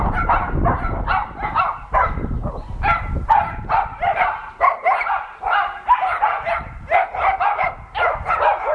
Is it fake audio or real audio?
real